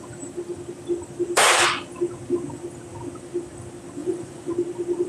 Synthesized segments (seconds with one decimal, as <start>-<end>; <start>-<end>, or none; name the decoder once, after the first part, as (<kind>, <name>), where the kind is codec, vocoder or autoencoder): 4.0-4.5 (vocoder, Vocos)